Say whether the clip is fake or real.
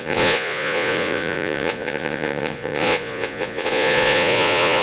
fake